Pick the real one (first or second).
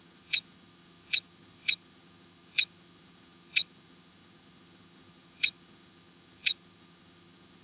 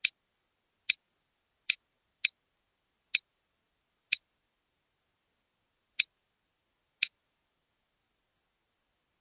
second